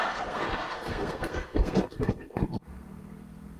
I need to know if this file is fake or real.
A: fake